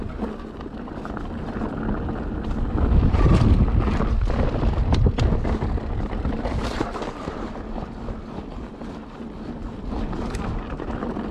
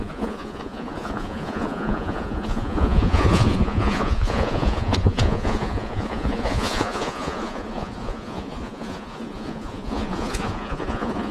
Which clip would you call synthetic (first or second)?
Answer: second